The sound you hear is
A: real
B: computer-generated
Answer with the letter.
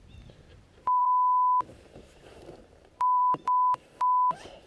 B